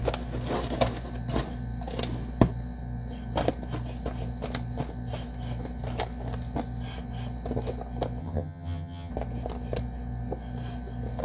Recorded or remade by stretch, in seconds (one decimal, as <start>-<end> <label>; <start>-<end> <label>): 0.0-8.2 recorded; 8.2-9.1 remade; 9.1-11.2 recorded